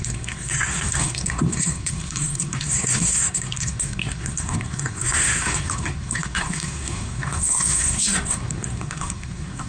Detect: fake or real fake